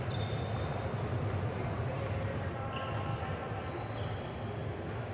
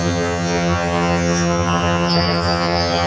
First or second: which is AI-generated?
second